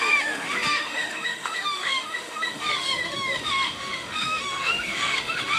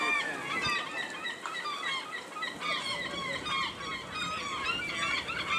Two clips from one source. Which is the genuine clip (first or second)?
second